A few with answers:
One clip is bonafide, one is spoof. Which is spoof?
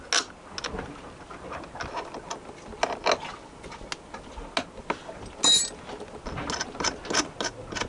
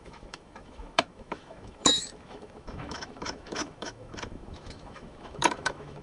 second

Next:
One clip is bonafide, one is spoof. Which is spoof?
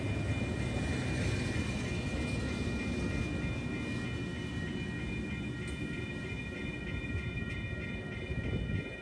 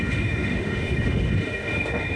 second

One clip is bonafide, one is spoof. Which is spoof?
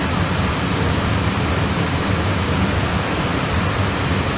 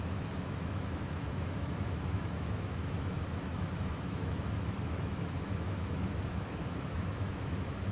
second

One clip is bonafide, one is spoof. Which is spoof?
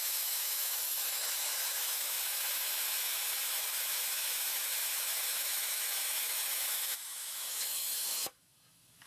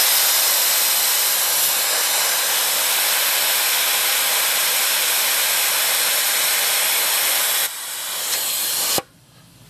first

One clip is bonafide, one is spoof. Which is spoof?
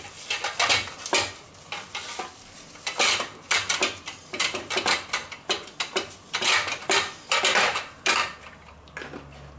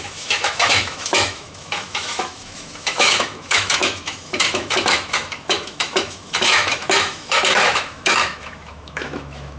second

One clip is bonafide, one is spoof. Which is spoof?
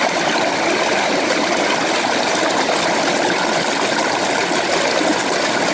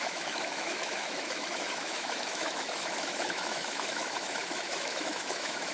second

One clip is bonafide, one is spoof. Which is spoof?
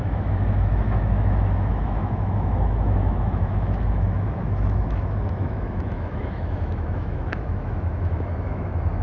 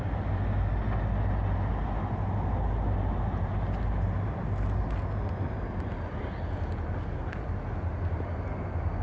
first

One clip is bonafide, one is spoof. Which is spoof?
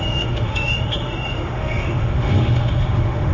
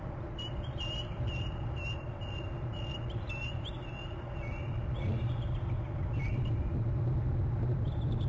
first